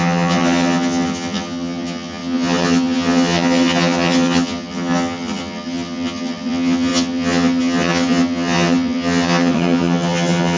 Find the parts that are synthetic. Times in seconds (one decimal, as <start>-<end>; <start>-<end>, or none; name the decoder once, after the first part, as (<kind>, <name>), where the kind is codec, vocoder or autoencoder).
0.0-10.6 (vocoder, HiFi-GAN)